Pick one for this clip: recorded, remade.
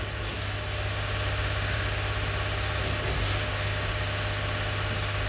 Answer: recorded